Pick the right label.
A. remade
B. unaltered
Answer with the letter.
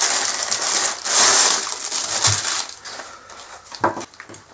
B